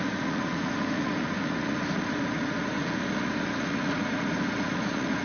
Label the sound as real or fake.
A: fake